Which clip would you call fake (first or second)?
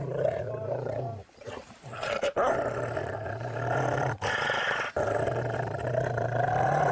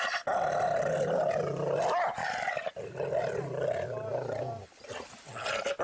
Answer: first